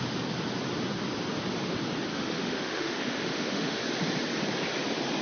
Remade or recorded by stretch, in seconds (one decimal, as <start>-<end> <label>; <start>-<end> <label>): 0.0-2.1 recorded; 2.1-3.8 remade; 3.8-5.2 recorded